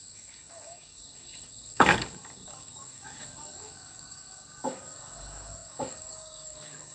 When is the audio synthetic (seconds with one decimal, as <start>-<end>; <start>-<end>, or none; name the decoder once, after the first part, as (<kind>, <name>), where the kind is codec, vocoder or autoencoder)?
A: 0.0-6.9 (codec, DAC)